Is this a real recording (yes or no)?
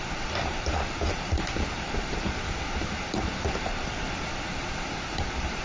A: no